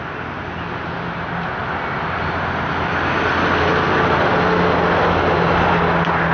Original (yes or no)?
yes